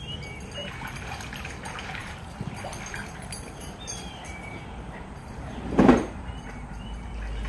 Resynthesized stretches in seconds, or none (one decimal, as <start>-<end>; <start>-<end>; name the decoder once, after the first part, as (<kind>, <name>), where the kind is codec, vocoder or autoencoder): 2.0-2.6 (vocoder, BigVGAN v2); 3.0-7.1